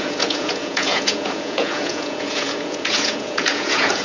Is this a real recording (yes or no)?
no